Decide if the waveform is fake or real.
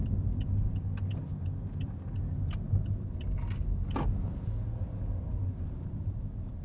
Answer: real